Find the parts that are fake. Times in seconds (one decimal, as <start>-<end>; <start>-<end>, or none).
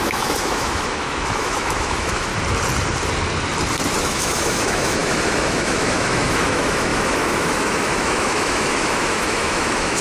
0.0-2.3; 4.0-10.0